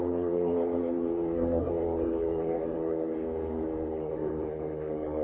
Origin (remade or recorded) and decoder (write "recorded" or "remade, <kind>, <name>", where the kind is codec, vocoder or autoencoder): remade, codec, SNAC